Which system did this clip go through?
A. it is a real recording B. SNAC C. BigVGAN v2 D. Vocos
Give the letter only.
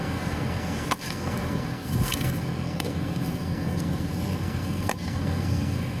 B